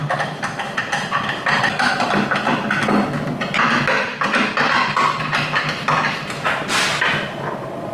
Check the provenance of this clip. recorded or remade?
recorded